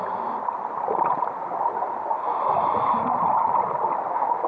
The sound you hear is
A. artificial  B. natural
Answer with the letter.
B